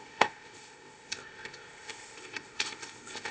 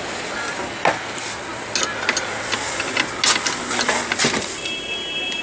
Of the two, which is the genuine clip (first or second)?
second